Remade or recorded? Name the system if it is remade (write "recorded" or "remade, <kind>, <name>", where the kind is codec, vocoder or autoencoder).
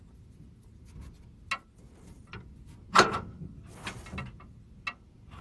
recorded